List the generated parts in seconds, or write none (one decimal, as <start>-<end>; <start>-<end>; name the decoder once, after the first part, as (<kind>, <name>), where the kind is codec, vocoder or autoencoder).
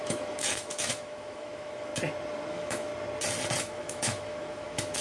0.0-1.9 (autoencoder, DAC-VAE); 2.5-2.9; 3.6-5.0